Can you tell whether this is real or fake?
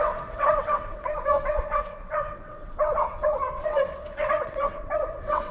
fake